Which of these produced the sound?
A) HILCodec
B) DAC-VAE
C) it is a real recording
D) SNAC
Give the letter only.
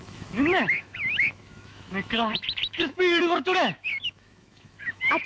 B